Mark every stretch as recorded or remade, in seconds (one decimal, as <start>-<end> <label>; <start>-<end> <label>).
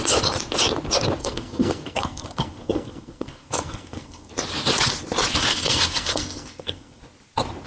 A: 0.0-1.2 recorded; 1.2-4.3 remade; 4.3-5.5 recorded; 5.5-7.0 remade; 7.0-7.7 recorded